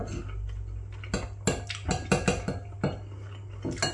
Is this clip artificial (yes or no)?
no